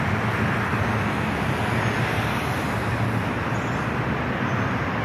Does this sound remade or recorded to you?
recorded